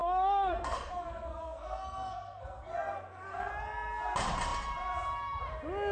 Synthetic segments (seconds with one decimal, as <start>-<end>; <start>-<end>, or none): 0.0-3.5